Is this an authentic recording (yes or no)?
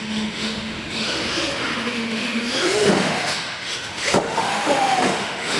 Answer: no